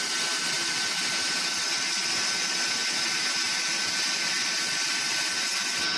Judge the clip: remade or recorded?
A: recorded